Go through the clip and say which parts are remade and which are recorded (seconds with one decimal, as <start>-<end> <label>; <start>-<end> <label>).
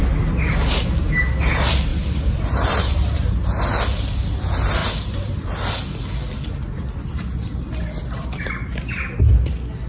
0.0-1.9 recorded; 1.9-3.3 remade; 3.3-4.8 recorded; 4.8-5.7 remade; 5.7-9.9 recorded